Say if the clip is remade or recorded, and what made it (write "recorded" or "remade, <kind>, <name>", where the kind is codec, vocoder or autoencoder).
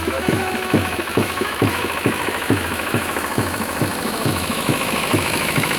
remade, autoencoder, DAC-VAE